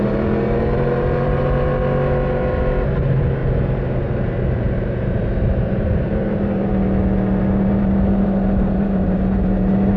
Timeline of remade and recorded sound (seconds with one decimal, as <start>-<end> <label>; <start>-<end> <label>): 0.0-1.7 remade; 1.7-3.0 recorded; 3.0-3.4 remade; 3.4-4.0 recorded; 4.0-6.7 remade; 6.7-7.4 recorded; 7.4-10.0 remade